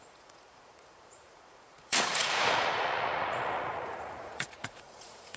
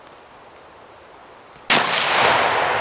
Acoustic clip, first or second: second